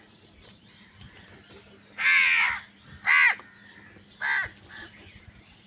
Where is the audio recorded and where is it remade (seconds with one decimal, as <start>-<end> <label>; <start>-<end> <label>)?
0.0-1.3 remade; 1.3-4.7 recorded; 4.7-5.7 remade